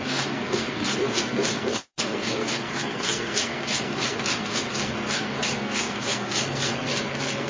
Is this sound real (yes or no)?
no